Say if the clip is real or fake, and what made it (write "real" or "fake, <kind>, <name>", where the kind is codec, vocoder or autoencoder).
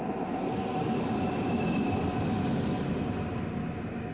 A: real